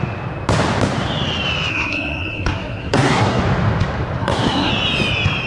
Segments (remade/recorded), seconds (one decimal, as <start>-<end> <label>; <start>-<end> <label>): 0.0-1.7 recorded; 1.7-3.4 remade; 3.4-4.2 recorded; 4.2-4.7 remade; 4.7-5.5 recorded